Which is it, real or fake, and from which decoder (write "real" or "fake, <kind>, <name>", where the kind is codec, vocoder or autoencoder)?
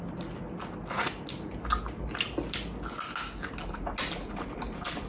real